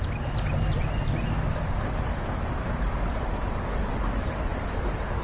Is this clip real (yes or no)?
yes